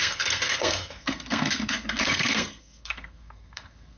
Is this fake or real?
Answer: fake